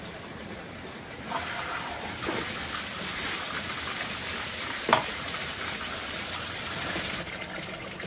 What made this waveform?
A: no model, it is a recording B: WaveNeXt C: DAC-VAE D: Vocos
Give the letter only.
A